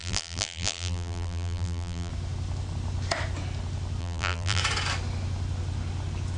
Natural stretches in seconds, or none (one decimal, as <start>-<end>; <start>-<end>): 2.1-4.0; 4.6-6.4